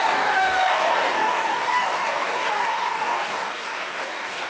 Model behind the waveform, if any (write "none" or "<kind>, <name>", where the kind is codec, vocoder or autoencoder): codec, DAC